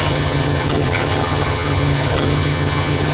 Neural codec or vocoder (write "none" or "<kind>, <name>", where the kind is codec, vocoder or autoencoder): vocoder, HiFi-GAN